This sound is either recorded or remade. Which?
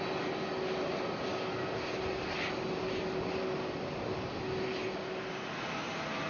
recorded